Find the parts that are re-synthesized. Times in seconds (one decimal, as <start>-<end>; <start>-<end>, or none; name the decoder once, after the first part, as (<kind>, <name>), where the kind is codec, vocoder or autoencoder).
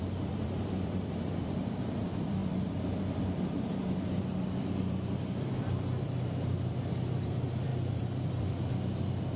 0.0-9.4 (vocoder, BigVGAN v2)